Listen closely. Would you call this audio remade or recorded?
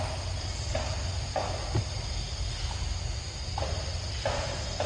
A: recorded